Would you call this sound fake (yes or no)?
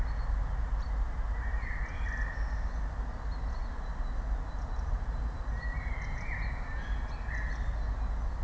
no